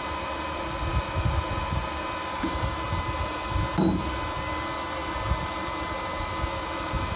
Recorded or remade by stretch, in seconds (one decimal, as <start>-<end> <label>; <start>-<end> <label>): 0.0-7.2 recorded

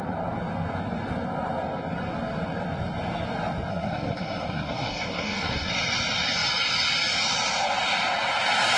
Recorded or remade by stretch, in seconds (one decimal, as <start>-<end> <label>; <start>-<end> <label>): 0.0-3.7 recorded; 3.7-5.7 remade; 5.7-8.8 recorded

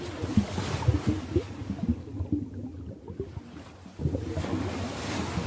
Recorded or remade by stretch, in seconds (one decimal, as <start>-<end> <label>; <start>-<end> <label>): 0.0-5.5 recorded

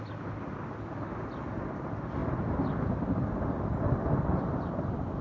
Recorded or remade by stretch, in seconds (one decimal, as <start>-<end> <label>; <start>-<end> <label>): 0.0-5.2 recorded

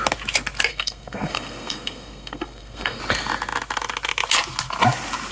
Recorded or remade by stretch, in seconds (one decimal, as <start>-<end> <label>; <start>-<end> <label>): 0.0-0.7 recorded; 0.7-3.0 remade; 3.0-5.3 recorded